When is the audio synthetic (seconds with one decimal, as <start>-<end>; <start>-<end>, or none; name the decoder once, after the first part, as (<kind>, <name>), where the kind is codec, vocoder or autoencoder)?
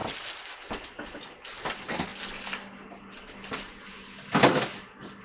none